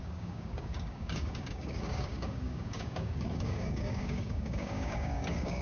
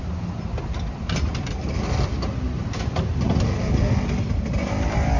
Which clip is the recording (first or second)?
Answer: second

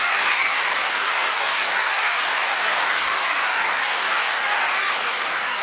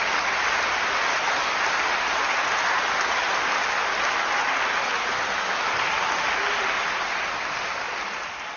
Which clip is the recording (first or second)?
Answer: second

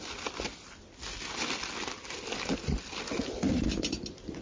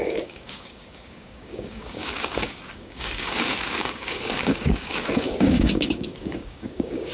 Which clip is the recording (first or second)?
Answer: first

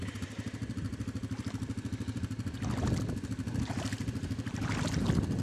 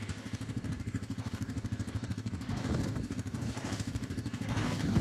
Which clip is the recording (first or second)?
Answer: first